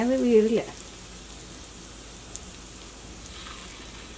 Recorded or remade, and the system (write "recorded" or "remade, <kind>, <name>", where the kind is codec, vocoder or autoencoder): recorded